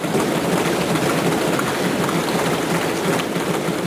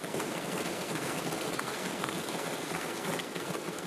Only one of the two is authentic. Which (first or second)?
first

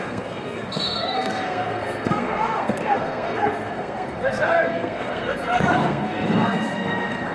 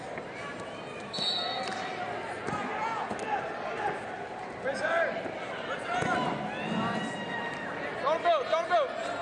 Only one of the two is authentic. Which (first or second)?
second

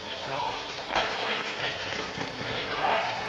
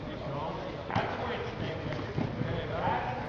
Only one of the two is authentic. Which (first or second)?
second